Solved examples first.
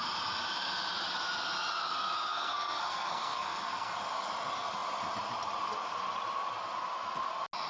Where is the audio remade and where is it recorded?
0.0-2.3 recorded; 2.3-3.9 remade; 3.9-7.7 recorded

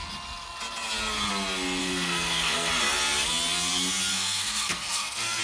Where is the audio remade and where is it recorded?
0.0-1.8 recorded; 1.8-2.7 remade; 2.7-4.1 recorded; 4.1-5.4 remade

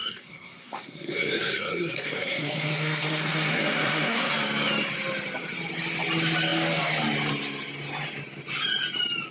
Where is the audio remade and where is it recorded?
0.0-4.3 remade; 4.3-9.3 recorded

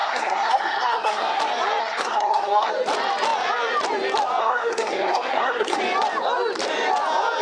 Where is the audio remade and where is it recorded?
0.0-1.4 remade; 1.4-1.8 recorded; 1.8-2.7 remade; 2.7-4.4 recorded; 4.4-5.8 remade; 5.8-7.4 recorded

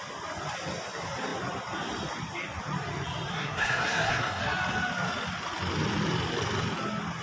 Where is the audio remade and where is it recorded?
0.0-3.3 recorded; 3.3-4.4 remade; 4.4-7.2 recorded

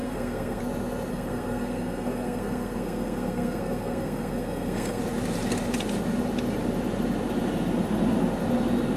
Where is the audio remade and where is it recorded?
0.0-0.6 remade; 0.6-1.1 recorded; 1.1-5.0 remade; 5.0-9.0 recorded

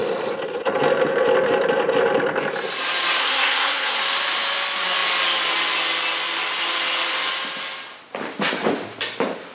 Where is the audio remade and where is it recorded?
0.0-3.2 recorded; 3.2-4.0 remade; 4.0-9.5 recorded